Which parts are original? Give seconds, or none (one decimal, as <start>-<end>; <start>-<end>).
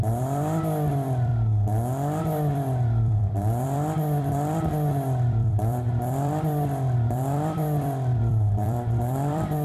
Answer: 1.3-2.2